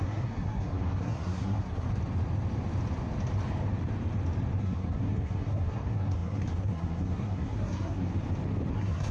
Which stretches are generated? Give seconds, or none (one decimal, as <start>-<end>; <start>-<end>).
0.0-1.9; 4.6-8.1; 8.7-9.1

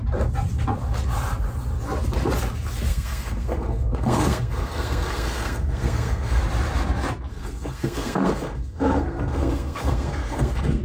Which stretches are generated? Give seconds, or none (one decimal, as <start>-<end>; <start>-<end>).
2.9-6.4; 7.3-10.8